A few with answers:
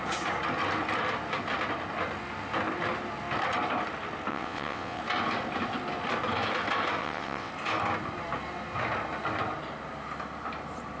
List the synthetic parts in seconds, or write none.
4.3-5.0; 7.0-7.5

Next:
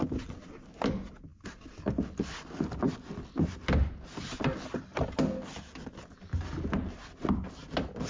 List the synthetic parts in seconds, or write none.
none

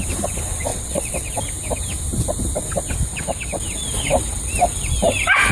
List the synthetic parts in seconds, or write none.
0.7-1.4

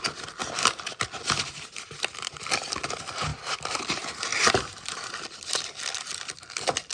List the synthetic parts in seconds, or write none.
none